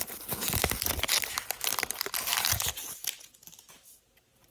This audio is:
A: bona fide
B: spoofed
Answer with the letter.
A